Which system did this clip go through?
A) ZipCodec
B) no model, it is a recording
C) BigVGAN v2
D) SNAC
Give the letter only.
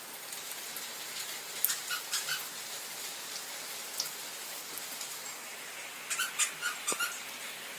B